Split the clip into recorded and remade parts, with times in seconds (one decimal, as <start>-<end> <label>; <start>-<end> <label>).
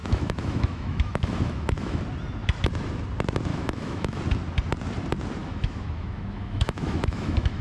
0.0-2.0 remade; 2.0-3.5 recorded; 3.5-4.2 remade; 4.2-5.4 recorded; 5.4-7.6 remade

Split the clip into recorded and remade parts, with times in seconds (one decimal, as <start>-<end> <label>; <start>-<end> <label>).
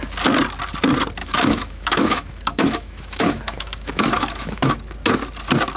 0.0-1.2 recorded; 1.2-4.7 remade; 4.7-5.8 recorded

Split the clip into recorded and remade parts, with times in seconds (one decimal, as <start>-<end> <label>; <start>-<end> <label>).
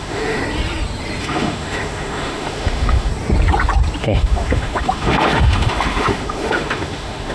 0.0-0.4 remade; 0.4-1.2 recorded; 1.2-3.1 remade; 3.1-4.0 recorded; 4.0-7.3 remade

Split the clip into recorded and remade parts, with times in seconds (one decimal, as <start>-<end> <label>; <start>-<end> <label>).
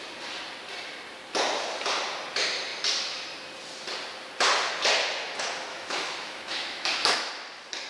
0.0-5.7 recorded; 5.7-7.3 remade; 7.3-7.9 recorded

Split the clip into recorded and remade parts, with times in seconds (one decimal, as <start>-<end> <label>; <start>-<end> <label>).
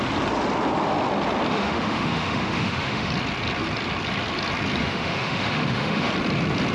0.0-1.5 recorded; 1.5-3.1 remade; 3.1-4.8 recorded; 4.8-6.1 remade; 6.1-6.7 recorded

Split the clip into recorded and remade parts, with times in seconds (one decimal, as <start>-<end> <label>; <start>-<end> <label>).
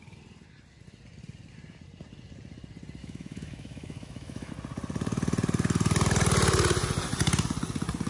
0.0-3.0 recorded; 3.0-4.5 remade; 4.5-8.1 recorded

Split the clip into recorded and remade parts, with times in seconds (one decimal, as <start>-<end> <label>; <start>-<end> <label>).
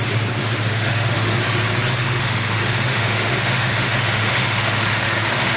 0.0-0.4 recorded; 0.4-1.4 remade; 1.4-2.0 recorded; 2.0-5.6 remade